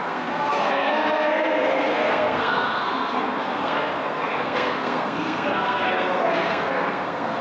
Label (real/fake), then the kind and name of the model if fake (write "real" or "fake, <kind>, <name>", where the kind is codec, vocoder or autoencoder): fake, codec, SNAC